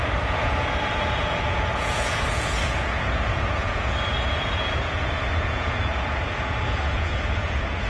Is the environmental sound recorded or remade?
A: remade